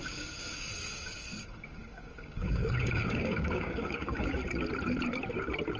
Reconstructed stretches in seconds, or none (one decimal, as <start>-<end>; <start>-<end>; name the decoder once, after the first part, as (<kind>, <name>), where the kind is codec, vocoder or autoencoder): 0.0-4.4 (codec, DAC)